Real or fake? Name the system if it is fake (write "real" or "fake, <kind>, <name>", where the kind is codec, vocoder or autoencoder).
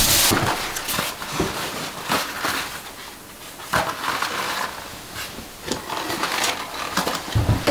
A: real